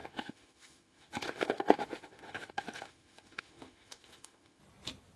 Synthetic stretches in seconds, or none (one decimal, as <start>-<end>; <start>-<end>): 0.0-4.6